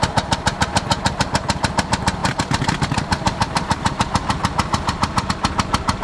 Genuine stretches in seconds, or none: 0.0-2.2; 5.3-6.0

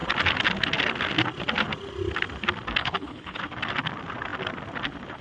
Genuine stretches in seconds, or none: 0.0-2.8; 3.4-5.2

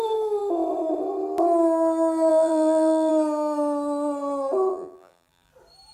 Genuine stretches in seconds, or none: 0.0-2.3; 3.1-4.7; 5.5-5.9

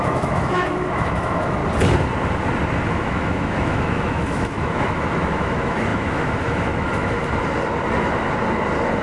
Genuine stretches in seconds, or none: 1.6-2.9; 7.2-9.0